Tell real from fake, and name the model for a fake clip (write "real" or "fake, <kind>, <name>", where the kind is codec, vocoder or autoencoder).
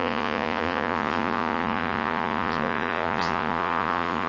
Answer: fake, vocoder, Vocos